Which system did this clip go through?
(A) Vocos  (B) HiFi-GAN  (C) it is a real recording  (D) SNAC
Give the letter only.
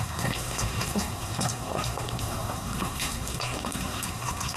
D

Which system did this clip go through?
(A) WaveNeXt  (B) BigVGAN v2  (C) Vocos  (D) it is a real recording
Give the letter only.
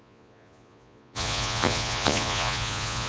C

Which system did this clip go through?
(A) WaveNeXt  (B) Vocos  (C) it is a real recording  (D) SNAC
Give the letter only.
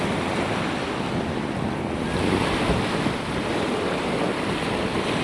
C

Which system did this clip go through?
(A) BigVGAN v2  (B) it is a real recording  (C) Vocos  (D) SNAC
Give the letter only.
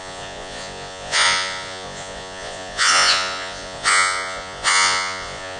C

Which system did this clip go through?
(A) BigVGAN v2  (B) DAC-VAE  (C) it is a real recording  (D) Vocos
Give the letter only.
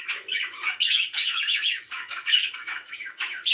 B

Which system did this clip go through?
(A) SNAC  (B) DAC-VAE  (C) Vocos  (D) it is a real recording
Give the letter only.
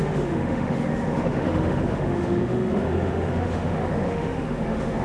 B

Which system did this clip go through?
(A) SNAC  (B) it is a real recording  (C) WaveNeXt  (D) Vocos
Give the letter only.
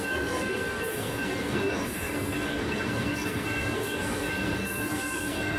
A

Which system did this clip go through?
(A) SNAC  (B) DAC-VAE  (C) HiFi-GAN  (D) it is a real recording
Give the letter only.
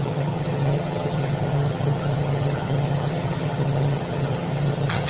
C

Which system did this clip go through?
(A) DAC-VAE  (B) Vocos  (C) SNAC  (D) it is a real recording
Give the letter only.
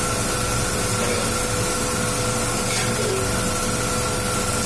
D